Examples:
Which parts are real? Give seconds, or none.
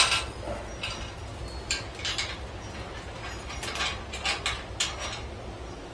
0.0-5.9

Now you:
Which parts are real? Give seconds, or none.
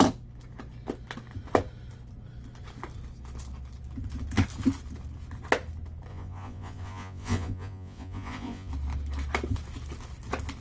0.0-6.1; 8.7-10.6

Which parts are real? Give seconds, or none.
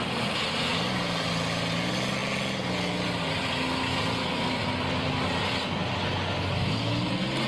0.0-0.7; 1.3-7.5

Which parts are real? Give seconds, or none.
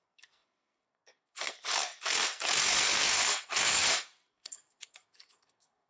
none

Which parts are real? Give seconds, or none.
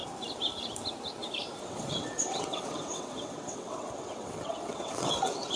0.0-1.6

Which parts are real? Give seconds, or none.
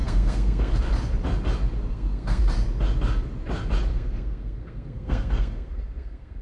0.8-1.9; 2.4-3.9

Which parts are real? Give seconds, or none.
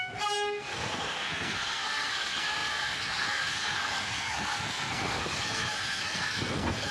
none